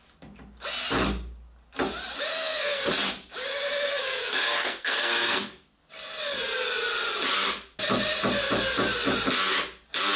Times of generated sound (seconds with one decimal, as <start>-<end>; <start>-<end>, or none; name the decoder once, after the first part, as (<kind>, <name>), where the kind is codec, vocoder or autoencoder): 2.3-2.9 (codec, SNAC); 3.9-5.9

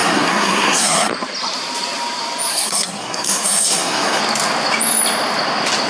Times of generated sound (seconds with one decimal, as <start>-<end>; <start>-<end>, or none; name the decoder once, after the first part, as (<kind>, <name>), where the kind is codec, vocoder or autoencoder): 0.0-1.1 (codec, SNAC); 2.5-4.2